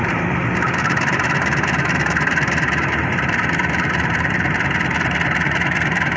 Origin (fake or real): fake